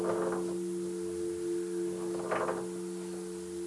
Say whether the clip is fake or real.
real